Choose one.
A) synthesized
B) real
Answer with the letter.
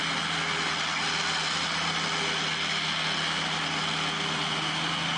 B